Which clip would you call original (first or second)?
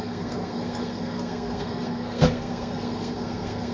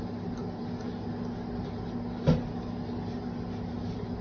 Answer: second